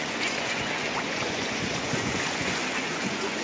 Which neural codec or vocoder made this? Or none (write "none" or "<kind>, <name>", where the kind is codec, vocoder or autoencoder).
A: vocoder, Vocos